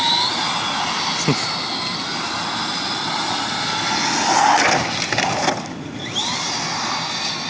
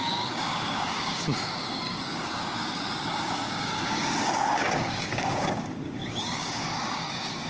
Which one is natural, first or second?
first